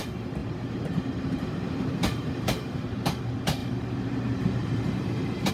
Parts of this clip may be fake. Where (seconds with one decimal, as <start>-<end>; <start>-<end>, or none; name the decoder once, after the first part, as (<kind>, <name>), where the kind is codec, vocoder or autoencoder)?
0.4-3.2 (vocoder, BigVGAN v2); 3.6-5.5